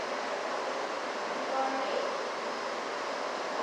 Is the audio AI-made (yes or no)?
no